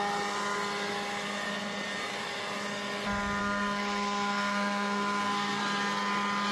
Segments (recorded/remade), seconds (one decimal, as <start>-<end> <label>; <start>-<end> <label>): 0.0-3.4 recorded; 3.4-5.6 remade; 5.6-6.5 recorded